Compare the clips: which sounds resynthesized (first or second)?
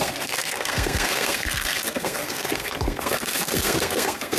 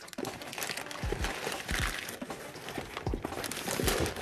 first